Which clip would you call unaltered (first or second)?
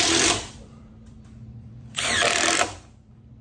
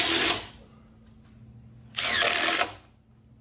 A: second